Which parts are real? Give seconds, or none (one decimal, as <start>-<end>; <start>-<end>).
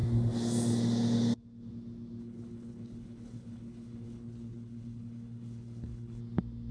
0.0-2.2; 6.2-6.7